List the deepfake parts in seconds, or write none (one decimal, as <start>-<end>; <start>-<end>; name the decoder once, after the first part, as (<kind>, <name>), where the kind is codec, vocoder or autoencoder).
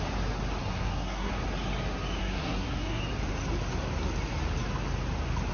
0.6-1.3 (codec, SNAC); 2.2-3.0